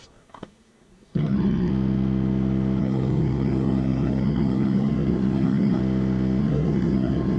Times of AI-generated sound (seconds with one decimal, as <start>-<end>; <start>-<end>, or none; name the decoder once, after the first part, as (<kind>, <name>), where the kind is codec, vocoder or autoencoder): 0.0-1.7 (codec, SNAC); 2.8-5.8; 6.4-7.4